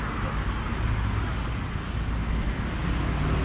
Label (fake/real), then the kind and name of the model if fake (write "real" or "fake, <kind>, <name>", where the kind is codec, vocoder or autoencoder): real